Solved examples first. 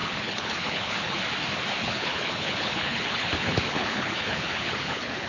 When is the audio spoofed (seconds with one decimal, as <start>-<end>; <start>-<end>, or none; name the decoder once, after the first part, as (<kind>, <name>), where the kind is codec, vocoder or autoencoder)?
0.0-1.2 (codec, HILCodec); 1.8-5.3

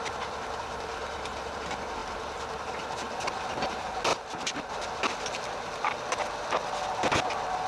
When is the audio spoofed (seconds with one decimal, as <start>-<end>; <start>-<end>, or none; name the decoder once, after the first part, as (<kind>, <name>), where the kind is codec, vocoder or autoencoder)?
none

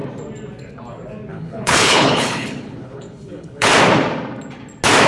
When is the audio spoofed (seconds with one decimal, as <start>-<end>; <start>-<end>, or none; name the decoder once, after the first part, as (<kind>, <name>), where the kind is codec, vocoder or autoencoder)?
1.3-3.7 (codec, HILCodec)

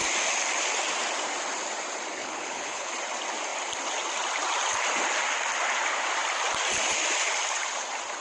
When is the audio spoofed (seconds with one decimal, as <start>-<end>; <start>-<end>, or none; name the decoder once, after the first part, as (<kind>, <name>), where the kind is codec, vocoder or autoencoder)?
2.2-2.9 (codec, HILCodec)

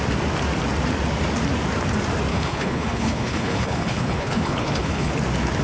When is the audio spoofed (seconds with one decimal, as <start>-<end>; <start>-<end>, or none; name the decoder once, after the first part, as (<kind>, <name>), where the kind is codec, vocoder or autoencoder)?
2.3-5.1 (codec, HILCodec)

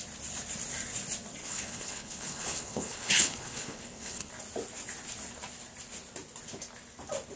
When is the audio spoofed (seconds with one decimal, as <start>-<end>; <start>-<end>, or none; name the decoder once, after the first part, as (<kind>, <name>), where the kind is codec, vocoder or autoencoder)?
1.4-4.3 (codec, HILCodec)

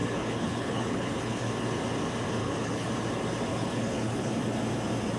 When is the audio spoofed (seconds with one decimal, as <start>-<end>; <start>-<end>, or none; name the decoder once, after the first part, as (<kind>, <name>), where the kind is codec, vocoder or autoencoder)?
0.0-1.5 (codec, HILCodec); 2.4-2.9; 3.5-4.3